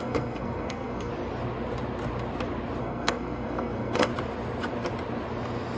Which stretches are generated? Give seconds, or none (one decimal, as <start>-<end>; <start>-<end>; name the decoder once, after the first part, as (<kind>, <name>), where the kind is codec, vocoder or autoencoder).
0.0-1.1 (codec, SNAC); 2.8-4.1